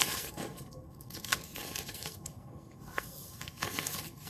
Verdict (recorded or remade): remade